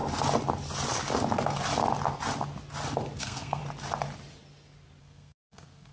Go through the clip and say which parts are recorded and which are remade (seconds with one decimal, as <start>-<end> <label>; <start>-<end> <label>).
0.0-3.2 recorded; 3.2-3.6 remade; 3.6-5.0 recorded; 5.0-5.9 remade